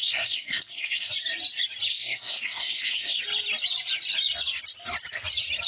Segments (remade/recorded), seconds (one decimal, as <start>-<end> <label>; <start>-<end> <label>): 0.0-1.1 remade; 1.1-1.9 recorded; 1.9-3.2 remade; 3.2-5.7 recorded